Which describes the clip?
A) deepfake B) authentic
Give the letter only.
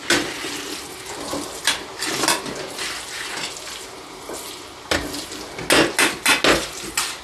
B